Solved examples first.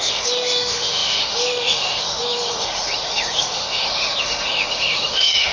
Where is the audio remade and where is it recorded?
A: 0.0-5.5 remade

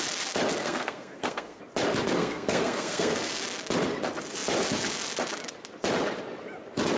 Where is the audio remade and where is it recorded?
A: 0.0-0.6 recorded; 0.6-1.6 remade; 1.6-2.2 recorded; 2.2-3.4 remade; 3.4-7.0 recorded

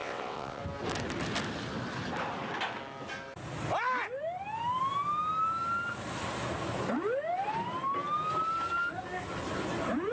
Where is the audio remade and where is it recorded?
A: 0.0-0.6 remade; 0.6-10.1 recorded

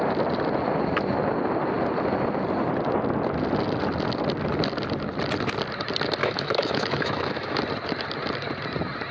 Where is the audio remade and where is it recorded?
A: 0.0-6.2 recorded; 6.2-7.6 remade; 7.6-9.1 recorded

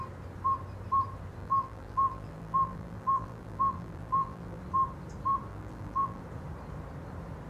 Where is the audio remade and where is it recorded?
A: 0.0-1.4 recorded; 1.4-4.6 remade; 4.6-5.5 recorded; 5.5-6.2 remade; 6.2-7.5 recorded

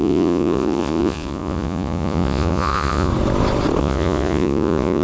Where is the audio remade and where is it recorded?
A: 0.0-3.1 remade; 3.1-3.8 recorded; 3.8-5.0 remade

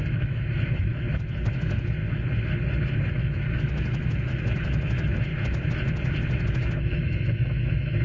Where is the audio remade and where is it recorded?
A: 0.0-0.9 remade; 0.9-1.5 recorded; 1.5-2.0 remade; 2.0-3.1 recorded; 3.1-5.3 remade; 5.3-6.5 recorded; 6.5-8.0 remade

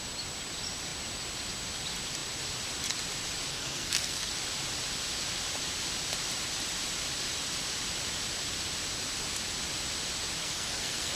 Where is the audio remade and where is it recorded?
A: 0.0-3.5 recorded; 3.5-4.3 remade; 4.3-10.4 recorded; 10.4-11.2 remade